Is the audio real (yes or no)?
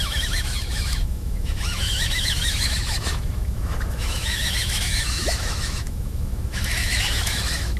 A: no